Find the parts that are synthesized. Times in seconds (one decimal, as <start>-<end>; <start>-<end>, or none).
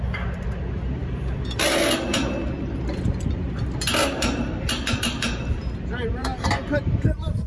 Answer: 4.0-6.7